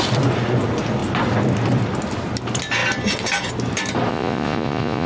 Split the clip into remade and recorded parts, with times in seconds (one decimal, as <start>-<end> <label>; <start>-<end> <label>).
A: 0.0-4.1 recorded; 4.1-5.1 remade